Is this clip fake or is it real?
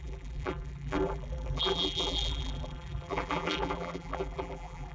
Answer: fake